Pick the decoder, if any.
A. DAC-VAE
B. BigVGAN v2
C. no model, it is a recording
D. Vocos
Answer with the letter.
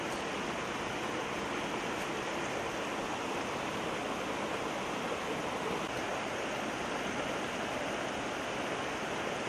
C